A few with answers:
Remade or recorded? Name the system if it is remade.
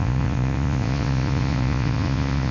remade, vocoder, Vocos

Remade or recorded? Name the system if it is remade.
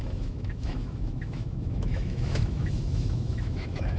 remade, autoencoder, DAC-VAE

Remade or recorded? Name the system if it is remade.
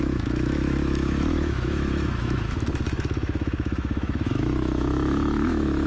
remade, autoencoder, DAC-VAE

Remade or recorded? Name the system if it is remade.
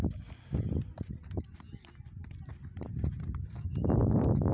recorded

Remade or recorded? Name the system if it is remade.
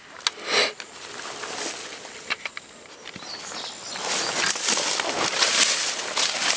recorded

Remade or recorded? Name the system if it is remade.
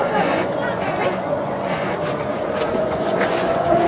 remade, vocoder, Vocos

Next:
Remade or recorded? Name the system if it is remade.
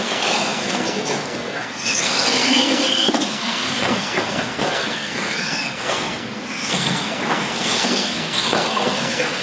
remade, codec, SNAC